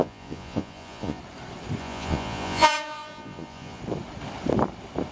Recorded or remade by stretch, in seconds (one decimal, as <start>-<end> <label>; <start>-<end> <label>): 0.0-1.2 remade; 1.2-1.8 recorded; 1.8-3.8 remade; 3.8-5.1 recorded